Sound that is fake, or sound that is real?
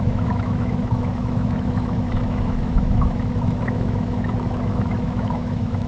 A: fake